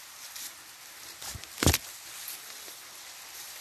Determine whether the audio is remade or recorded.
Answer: recorded